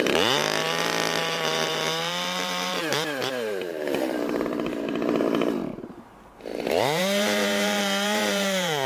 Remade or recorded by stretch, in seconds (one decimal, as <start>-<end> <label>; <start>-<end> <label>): 0.0-0.6 remade; 0.6-1.2 recorded; 1.2-8.9 remade